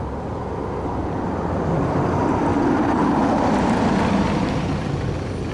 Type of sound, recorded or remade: recorded